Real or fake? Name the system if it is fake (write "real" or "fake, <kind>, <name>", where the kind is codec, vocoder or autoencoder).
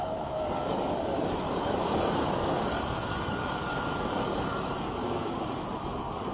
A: fake, codec, DAC